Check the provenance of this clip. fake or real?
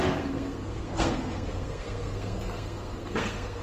fake